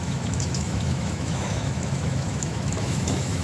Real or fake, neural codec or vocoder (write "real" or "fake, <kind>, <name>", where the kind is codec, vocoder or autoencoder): fake, autoencoder, DAC-VAE